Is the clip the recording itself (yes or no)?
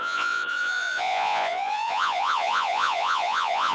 no